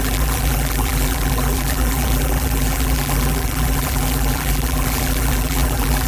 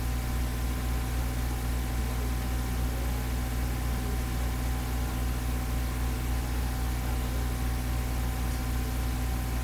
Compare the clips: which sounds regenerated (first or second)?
first